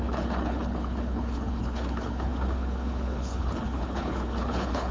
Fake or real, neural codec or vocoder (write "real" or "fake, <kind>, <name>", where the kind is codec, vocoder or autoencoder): fake, codec, HILCodec